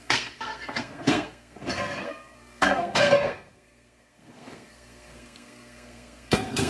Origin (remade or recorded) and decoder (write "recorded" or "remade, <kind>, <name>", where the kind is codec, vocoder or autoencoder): remade, codec, SNAC